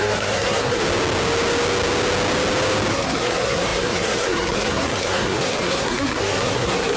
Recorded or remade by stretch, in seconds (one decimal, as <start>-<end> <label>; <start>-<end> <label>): 0.0-0.8 remade; 0.8-2.9 recorded; 2.9-7.0 remade